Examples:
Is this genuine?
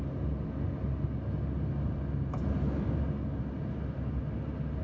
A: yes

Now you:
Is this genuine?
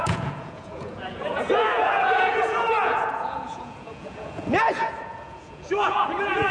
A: no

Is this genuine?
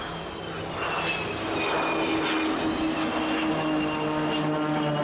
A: yes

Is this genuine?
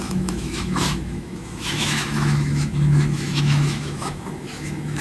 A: no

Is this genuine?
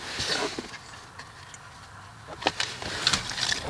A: yes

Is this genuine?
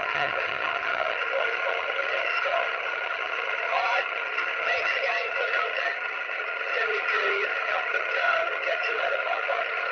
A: no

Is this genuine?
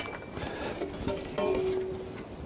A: yes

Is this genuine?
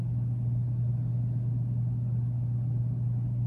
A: yes